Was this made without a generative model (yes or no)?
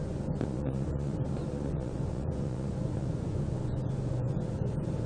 no